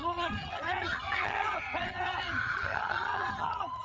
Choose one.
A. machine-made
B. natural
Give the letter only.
A